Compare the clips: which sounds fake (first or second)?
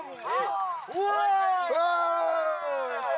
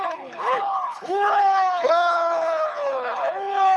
second